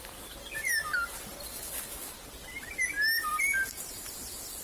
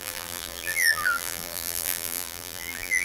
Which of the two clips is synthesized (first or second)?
second